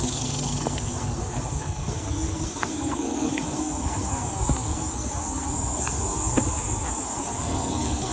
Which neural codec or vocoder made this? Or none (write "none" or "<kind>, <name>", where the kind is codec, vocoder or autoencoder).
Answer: codec, SNAC